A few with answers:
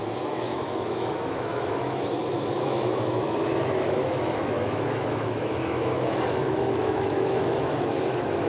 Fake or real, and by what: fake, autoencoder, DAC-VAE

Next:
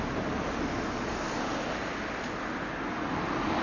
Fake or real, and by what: real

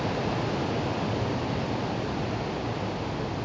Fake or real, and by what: real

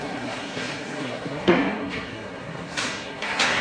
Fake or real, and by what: fake, codec, SNAC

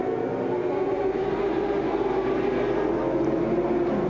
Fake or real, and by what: real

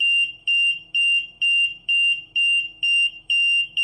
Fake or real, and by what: fake, autoencoder, DAC-VAE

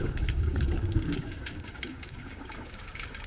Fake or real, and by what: fake, codec, DAC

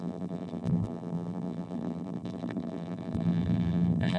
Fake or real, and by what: fake, vocoder, BigVGAN v2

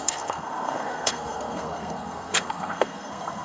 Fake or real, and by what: fake, codec, SNAC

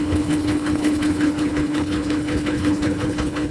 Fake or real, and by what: fake, codec, HILCodec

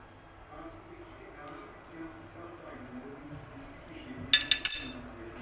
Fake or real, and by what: real